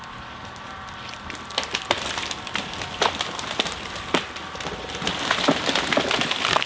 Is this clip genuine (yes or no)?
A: yes